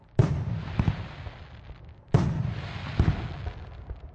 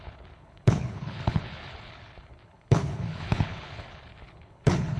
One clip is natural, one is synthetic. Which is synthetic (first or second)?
second